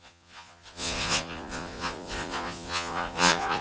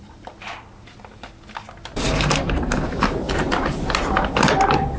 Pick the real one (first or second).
second